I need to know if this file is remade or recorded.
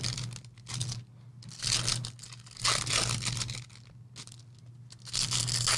recorded